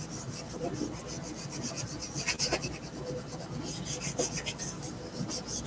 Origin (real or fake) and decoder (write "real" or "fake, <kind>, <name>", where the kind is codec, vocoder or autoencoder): real